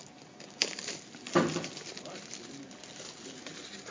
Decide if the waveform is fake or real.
real